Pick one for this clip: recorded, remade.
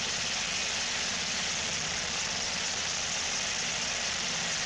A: recorded